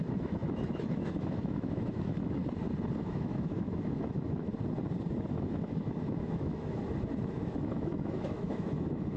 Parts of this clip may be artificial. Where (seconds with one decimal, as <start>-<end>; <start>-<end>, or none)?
0.0-2.4; 3.0-4.5; 5.3-6.8; 7.3-9.2